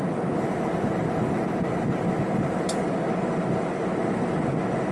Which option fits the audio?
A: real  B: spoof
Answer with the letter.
A